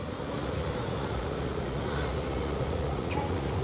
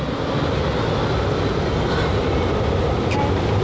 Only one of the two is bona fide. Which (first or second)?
second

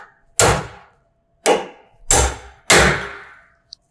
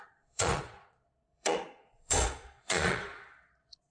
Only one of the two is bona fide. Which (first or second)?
first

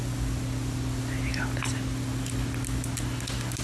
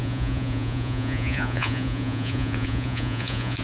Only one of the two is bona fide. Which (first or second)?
first